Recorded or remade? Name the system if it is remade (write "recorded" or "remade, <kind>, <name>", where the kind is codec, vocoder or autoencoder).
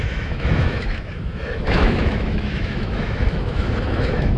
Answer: remade, autoencoder, DAC-VAE